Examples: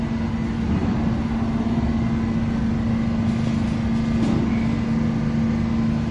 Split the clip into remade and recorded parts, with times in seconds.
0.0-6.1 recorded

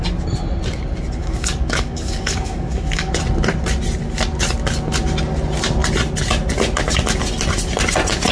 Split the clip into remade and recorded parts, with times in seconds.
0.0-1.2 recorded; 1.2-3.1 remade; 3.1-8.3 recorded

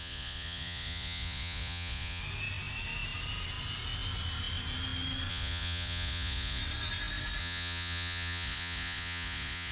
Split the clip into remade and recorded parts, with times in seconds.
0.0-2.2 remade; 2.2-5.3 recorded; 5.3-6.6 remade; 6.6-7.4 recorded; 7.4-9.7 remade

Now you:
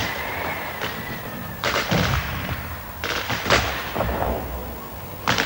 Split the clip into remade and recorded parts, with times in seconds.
0.0-3.3 remade; 3.3-5.5 recorded